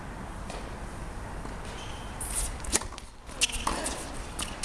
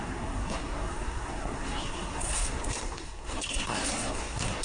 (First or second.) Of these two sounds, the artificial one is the second